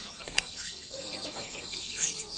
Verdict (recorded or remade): remade